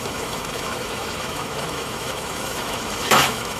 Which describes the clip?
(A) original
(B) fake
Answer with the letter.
B